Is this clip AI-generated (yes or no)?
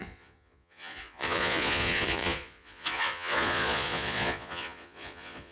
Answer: yes